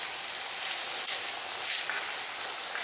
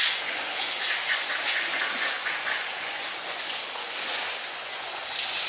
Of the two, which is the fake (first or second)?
second